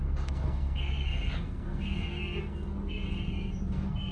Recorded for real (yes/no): no